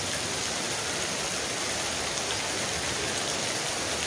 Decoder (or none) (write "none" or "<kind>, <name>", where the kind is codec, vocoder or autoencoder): none